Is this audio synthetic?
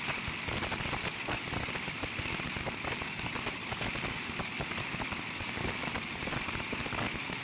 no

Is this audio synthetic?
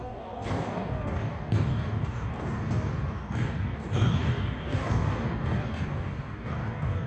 yes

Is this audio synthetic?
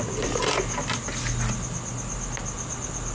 no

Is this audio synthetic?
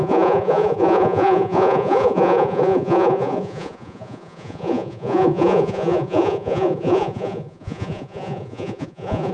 yes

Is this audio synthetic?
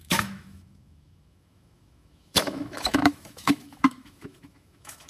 yes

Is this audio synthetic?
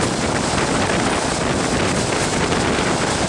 no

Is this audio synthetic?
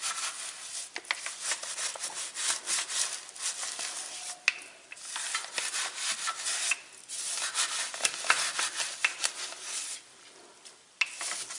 no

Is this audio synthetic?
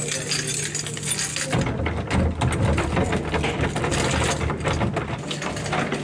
no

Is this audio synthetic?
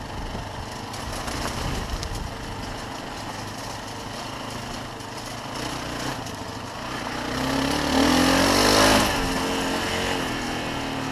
no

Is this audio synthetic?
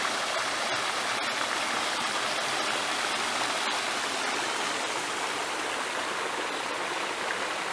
no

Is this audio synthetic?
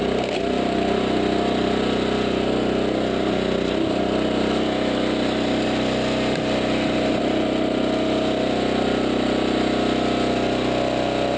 no